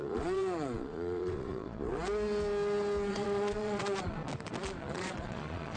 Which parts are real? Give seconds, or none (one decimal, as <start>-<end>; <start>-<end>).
2.0-3.1; 4.2-4.8